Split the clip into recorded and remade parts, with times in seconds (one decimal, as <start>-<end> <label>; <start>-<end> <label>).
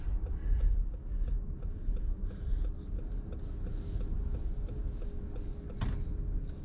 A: 0.0-0.8 remade; 0.8-1.6 recorded; 1.6-4.8 remade; 4.8-6.6 recorded